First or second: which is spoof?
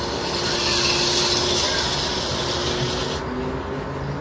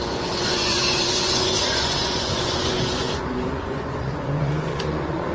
second